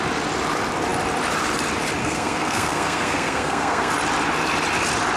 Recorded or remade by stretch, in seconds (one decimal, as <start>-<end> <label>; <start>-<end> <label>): 0.0-2.0 recorded; 2.0-3.9 remade; 3.9-5.2 recorded